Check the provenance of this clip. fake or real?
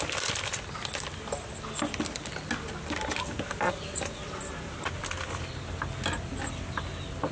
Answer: real